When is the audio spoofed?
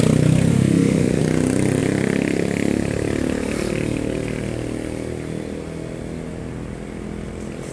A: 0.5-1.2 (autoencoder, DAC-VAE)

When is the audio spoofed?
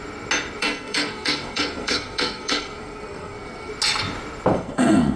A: 0.6-3.7 (codec, SNAC); 4.5-5.2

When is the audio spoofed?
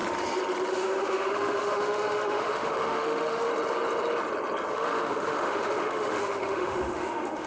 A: 0.7-3.5 (autoencoder, DAC-VAE); 4.7-7.5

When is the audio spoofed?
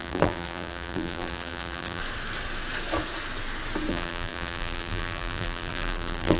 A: 0.0-2.0 (vocoder, BigVGAN v2); 3.9-6.4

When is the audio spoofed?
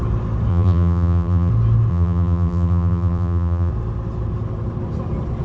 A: 0.5-1.5 (vocoder, BigVGAN v2); 1.9-3.7